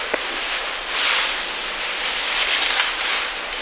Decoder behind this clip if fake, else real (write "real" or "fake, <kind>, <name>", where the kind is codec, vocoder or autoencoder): real